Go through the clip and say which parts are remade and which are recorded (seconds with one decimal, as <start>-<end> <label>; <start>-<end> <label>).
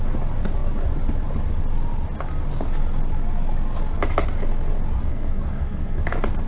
0.0-5.1 recorded; 5.1-6.0 remade; 6.0-6.5 recorded